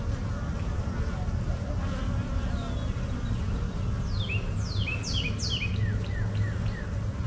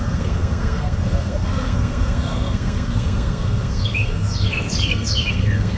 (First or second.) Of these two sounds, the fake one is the second